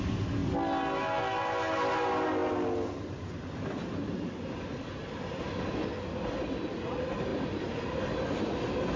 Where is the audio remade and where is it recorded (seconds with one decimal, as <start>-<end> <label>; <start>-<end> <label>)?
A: 0.0-9.0 recorded